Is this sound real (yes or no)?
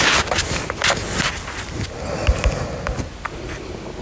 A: yes